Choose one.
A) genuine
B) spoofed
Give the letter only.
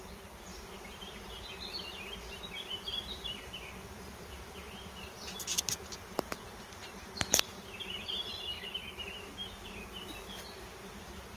B